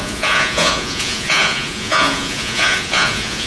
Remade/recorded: remade